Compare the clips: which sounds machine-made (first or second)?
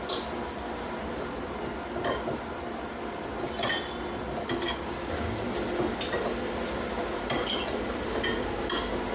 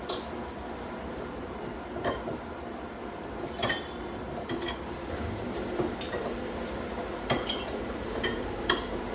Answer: second